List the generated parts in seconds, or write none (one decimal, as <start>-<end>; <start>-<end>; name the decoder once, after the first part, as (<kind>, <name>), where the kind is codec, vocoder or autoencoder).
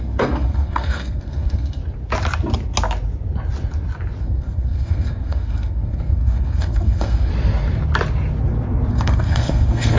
0.0-1.8 (codec, SNAC); 4.2-7.3; 8.9-10.0